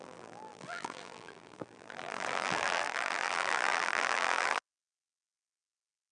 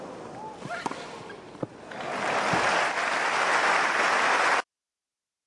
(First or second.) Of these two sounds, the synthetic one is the first